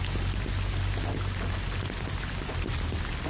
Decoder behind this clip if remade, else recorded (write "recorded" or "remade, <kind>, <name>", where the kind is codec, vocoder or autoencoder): recorded